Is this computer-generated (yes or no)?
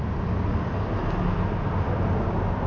no